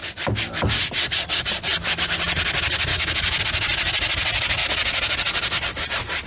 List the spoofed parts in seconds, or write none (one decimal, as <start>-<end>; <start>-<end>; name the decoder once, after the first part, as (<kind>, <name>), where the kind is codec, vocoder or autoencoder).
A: 2.9-3.4 (autoencoder, DAC-VAE)